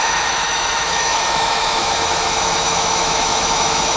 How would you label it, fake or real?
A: fake